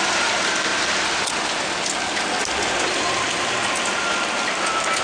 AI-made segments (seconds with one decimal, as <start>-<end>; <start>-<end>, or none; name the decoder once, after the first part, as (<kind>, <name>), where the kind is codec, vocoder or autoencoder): none